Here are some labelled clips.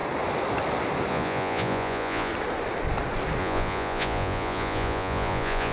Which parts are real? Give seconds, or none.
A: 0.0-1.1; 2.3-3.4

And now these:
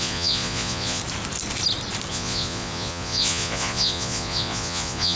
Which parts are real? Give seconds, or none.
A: 1.0-2.1